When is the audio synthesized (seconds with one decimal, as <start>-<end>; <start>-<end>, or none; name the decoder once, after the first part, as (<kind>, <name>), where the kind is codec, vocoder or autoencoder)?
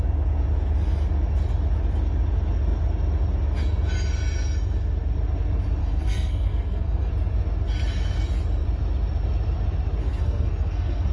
5.8-7.1 (codec, SNAC); 10.0-11.1